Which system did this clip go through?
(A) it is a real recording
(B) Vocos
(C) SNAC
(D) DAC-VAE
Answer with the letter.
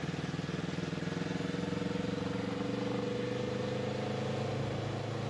A